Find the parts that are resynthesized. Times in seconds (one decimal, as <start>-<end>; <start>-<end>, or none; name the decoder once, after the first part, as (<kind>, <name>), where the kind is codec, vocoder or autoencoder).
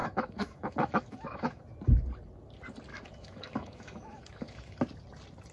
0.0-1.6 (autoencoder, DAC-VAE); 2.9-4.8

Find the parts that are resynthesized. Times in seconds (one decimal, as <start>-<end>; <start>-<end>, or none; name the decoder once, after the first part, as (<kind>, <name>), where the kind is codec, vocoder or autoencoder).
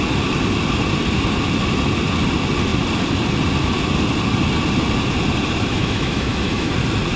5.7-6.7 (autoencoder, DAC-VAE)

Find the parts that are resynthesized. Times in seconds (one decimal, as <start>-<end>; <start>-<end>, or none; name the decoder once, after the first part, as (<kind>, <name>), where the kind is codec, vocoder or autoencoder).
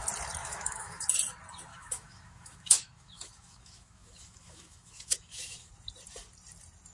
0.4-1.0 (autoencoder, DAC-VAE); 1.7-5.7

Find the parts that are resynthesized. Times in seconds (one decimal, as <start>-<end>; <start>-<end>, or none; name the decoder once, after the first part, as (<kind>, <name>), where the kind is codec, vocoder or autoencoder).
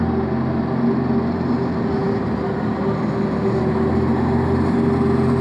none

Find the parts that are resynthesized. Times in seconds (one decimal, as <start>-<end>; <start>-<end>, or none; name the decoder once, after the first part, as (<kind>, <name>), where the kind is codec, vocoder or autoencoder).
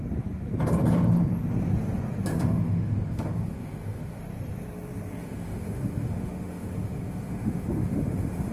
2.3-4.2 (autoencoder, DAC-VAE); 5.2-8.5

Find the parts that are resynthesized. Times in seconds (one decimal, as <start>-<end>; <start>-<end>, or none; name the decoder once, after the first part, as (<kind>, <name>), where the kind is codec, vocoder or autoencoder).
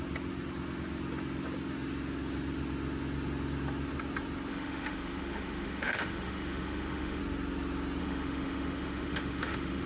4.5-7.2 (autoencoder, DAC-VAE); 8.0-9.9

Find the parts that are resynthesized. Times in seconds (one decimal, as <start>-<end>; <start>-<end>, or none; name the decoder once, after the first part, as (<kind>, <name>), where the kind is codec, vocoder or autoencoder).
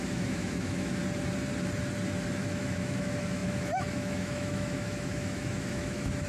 0.0-1.0 (autoencoder, DAC-VAE); 2.4-6.3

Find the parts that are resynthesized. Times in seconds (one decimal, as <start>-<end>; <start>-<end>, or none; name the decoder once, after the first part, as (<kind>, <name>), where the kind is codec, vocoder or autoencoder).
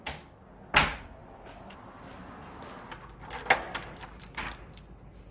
none